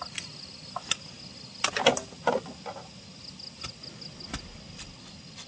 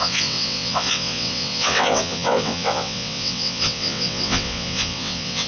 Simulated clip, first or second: second